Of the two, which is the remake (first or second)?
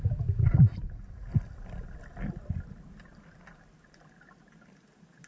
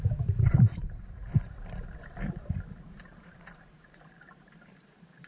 second